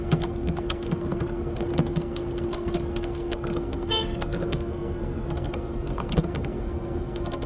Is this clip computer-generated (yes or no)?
yes